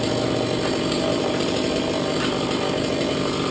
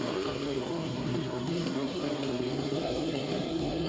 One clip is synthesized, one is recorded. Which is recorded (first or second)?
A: first